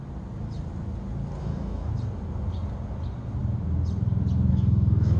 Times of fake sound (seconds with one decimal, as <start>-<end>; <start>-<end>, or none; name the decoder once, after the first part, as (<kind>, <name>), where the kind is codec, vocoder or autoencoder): 1.4-1.9 (codec, DAC); 4.5-5.2